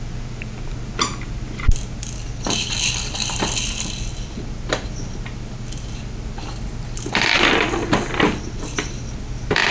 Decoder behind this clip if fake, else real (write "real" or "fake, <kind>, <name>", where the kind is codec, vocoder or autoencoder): real